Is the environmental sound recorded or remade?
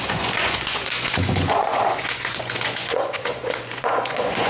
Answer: remade